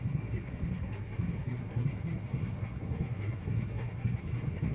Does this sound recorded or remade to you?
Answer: remade